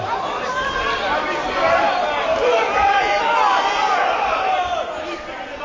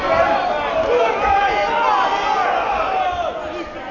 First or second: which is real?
second